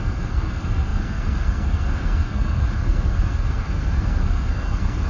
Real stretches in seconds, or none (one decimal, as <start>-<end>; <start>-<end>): none